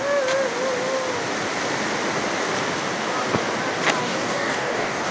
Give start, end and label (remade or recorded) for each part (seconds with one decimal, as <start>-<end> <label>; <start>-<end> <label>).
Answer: 0.0-4.0 recorded; 4.0-5.1 remade